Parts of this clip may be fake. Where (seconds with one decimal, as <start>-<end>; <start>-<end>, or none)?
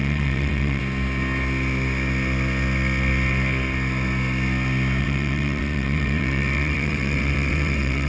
0.0-0.8; 5.0-8.1